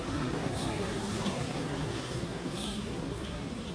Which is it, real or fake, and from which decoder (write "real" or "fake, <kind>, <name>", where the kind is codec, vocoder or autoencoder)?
fake, codec, SNAC